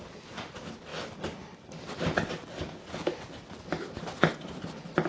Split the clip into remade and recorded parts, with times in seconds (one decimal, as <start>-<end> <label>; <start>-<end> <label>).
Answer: 0.0-5.1 recorded